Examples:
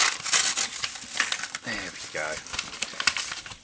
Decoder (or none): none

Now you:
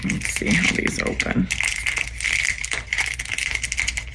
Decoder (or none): none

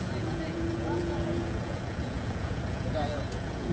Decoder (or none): vocoder, Vocos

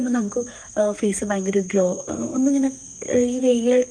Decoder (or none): codec, SNAC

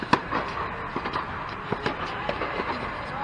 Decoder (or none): none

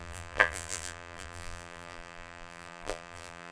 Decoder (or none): vocoder, BigVGAN v2